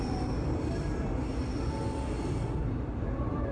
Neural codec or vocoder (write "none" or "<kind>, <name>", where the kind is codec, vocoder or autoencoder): none